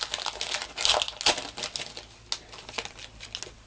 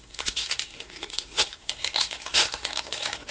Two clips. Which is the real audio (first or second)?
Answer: first